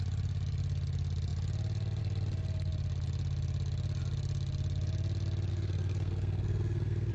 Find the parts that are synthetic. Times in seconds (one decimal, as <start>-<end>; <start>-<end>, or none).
5.5-7.1